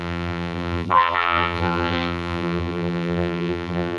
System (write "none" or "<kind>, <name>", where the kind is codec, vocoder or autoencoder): vocoder, BigVGAN v2